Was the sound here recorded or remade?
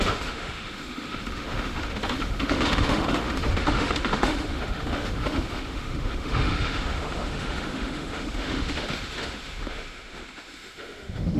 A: remade